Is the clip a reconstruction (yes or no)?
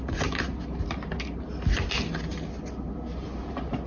no